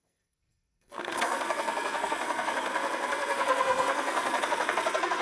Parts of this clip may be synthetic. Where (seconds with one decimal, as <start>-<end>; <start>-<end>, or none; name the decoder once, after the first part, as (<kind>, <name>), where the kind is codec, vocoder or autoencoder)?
0.0-5.2 (codec, SNAC)

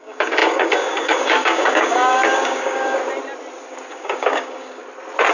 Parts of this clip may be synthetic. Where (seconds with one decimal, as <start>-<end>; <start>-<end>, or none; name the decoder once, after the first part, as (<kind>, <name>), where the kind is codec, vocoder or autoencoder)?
0.0-3.0 (codec, DAC); 3.9-4.8

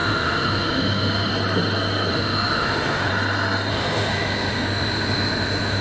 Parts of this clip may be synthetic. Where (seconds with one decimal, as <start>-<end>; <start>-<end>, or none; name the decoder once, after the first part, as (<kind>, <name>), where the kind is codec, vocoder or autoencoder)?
0.0-1.3 (autoencoder, DAC-VAE); 2.1-3.1; 3.7-5.8

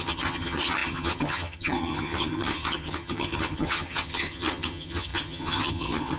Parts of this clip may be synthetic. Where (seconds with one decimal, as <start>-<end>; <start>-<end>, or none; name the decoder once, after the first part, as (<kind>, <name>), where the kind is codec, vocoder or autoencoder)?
0.0-6.2 (vocoder, HiFi-GAN)

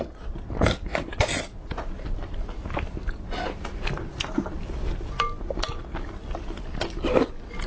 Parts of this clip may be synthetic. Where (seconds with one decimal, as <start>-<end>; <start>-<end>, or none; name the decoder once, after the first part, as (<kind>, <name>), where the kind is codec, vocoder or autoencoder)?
none